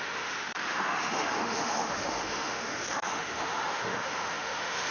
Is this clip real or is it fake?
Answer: fake